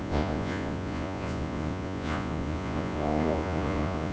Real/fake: fake